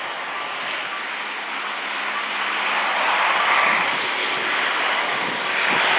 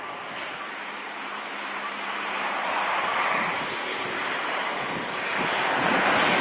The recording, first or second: first